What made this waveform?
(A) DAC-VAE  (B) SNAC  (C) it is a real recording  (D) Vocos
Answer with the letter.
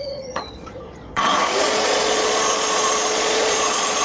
D